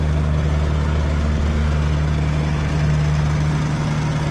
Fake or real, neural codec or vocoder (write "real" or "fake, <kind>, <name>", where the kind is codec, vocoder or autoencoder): real